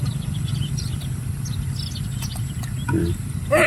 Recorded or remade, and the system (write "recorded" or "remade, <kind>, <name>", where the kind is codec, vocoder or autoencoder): recorded